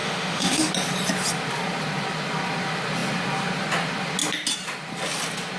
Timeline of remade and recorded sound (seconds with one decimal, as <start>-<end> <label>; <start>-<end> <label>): 0.0-0.7 remade; 0.7-5.6 recorded